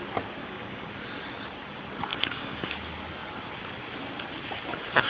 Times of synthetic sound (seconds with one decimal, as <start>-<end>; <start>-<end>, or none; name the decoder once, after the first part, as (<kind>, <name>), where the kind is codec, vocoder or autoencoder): 0.4-0.9 (codec, DAC); 2.1-2.7